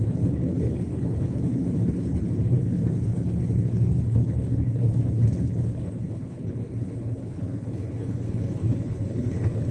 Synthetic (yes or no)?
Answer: yes